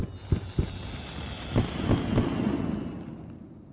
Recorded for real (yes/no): yes